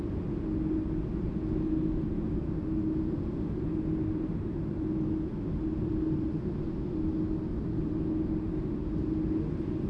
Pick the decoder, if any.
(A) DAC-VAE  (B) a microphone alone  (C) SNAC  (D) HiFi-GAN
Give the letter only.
B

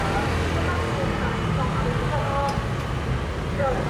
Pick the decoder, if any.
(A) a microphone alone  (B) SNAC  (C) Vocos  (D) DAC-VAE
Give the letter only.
A